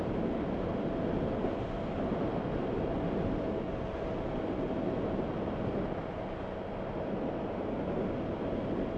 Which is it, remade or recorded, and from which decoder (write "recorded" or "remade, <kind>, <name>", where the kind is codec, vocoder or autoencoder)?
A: recorded